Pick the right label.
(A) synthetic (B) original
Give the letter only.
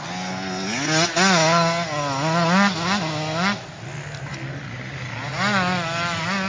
B